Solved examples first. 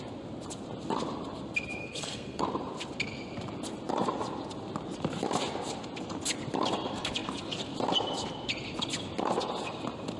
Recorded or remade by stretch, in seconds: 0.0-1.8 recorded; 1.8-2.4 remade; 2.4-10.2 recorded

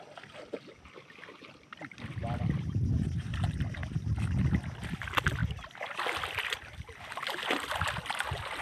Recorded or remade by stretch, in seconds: 0.0-8.6 recorded

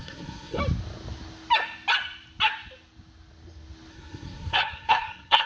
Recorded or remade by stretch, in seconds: 0.0-0.6 remade; 0.6-3.9 recorded; 3.9-5.5 remade

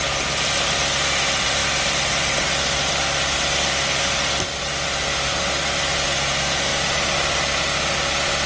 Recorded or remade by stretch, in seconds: 0.0-8.5 recorded